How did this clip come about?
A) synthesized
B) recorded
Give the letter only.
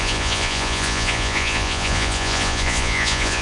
A